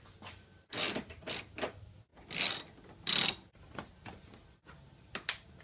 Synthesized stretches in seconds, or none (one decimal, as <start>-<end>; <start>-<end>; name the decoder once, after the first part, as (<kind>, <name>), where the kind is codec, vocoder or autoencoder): none